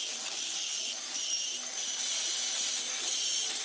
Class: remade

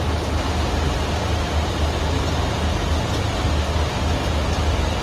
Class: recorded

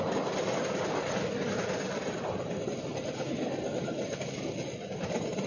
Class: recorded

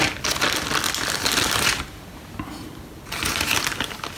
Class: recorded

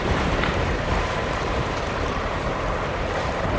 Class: remade